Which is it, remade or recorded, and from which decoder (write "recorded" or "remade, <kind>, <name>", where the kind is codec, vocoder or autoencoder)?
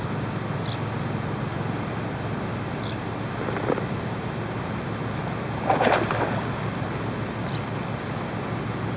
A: recorded